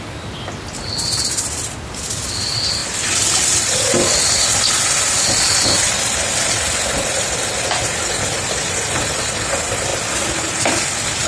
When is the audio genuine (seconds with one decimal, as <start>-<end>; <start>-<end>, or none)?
0.0-11.3